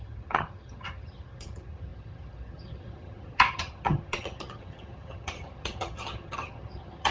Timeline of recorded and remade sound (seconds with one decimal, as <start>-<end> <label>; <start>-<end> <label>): 0.0-7.1 remade